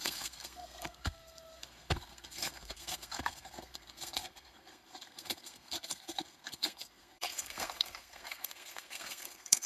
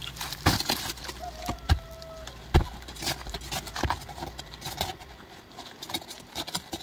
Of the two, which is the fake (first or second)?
first